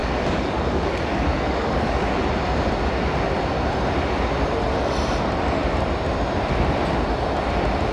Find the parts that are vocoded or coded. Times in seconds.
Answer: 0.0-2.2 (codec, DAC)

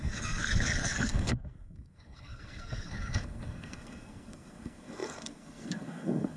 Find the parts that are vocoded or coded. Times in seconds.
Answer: 0.0-6.4 (codec, SNAC)

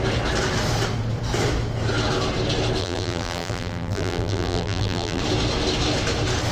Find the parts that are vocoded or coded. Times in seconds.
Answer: 2.8-5.2 (vocoder, BigVGAN v2)

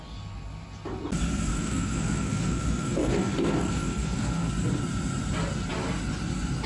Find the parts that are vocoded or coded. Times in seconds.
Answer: 1.5-4.5 (codec, SNAC)

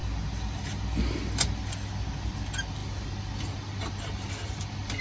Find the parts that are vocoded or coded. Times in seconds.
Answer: none

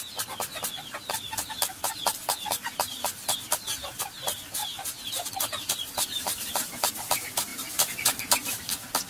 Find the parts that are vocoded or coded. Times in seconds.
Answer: 4.6-5.3 (vocoder, BigVGAN v2); 7.5-8.5

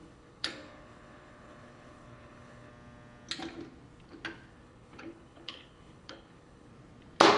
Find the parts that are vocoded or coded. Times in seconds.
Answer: 0.0-2.7 (codec, HILCodec); 4.5-6.7